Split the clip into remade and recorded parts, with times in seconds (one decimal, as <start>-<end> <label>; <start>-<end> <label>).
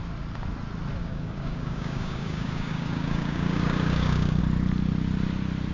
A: 0.0-1.0 recorded; 1.0-4.4 remade; 4.4-5.7 recorded